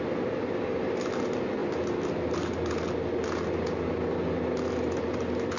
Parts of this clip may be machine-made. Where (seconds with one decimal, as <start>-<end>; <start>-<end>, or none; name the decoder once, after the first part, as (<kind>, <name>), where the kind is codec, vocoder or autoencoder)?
none